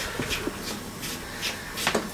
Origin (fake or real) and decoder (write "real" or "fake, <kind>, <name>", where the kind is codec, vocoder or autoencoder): real